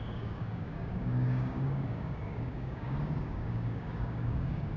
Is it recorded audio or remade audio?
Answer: remade